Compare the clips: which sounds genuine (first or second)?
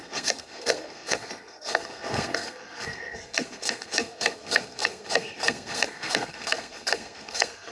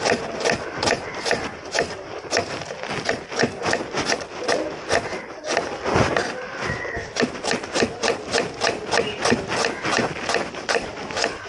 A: second